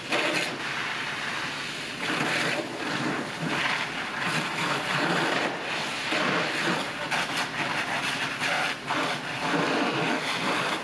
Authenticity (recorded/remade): recorded